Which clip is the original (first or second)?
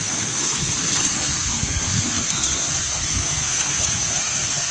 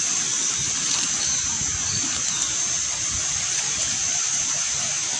second